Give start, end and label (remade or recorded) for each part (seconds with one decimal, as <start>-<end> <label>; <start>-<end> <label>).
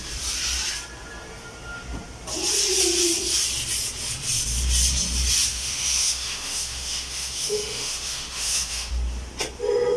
0.0-5.5 recorded; 5.5-8.9 remade; 8.9-10.0 recorded